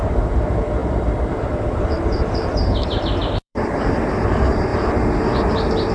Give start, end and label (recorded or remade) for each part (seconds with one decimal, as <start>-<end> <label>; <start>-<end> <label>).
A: 0.0-0.8 recorded; 0.8-1.5 remade; 1.5-3.2 recorded; 3.2-4.1 remade; 4.1-5.9 recorded